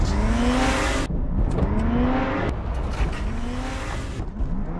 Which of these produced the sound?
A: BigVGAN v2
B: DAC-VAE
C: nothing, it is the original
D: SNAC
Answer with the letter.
C